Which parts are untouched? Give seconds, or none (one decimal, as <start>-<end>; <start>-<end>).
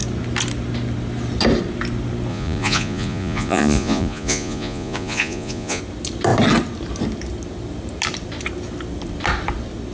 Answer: 0.0-2.3; 5.8-9.9